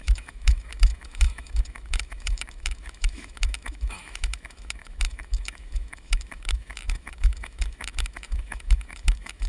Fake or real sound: fake